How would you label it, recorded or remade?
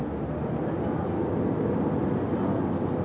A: recorded